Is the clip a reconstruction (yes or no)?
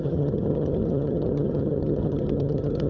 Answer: yes